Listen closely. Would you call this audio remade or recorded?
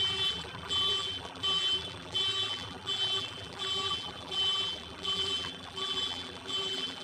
remade